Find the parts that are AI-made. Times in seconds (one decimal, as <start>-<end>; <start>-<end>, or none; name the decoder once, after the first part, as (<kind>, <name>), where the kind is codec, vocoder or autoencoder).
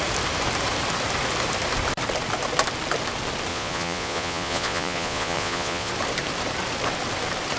3.5-5.9 (vocoder, Vocos)